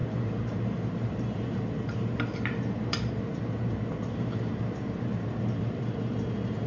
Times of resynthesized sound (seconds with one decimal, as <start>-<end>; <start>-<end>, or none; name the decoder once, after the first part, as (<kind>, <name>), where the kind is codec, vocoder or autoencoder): 0.0-6.7 (vocoder, BigVGAN v2)